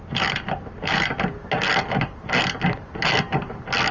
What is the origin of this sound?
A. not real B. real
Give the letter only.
B